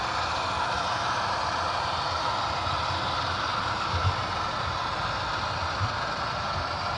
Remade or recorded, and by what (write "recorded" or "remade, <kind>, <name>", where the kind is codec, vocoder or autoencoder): recorded